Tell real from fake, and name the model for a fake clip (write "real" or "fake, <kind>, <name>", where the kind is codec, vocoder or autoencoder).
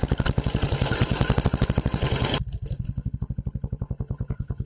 real